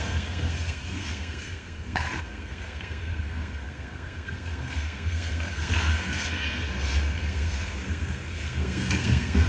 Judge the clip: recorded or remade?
remade